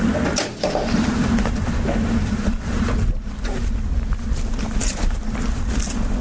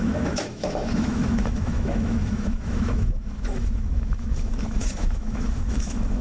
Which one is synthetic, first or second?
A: second